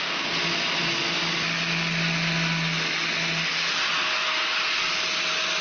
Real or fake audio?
real